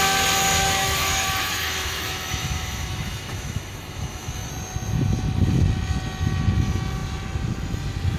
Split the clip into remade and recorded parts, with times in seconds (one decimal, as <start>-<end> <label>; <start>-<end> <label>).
0.0-0.8 recorded; 0.8-4.5 remade; 4.5-8.2 recorded